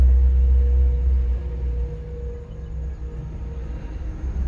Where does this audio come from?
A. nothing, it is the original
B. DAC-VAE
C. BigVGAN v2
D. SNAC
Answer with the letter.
A